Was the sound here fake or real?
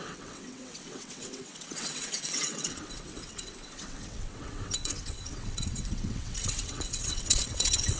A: fake